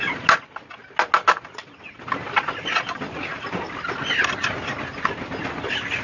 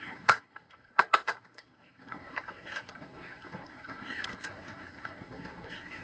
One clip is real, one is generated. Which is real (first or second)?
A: first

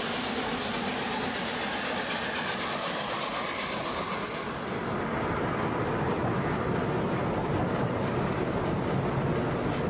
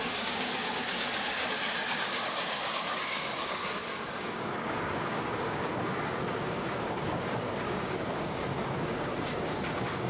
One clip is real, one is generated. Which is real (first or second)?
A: first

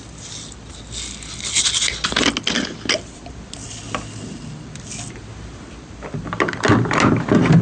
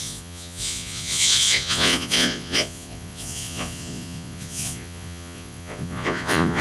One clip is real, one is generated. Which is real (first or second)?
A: first